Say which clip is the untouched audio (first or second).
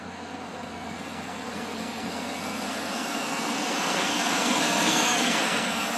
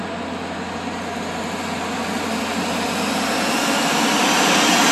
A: second